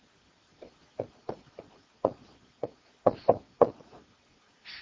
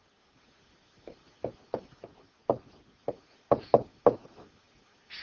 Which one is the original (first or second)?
second